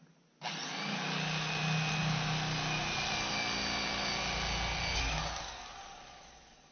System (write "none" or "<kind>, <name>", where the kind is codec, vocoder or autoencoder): none